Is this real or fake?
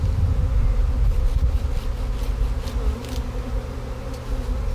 real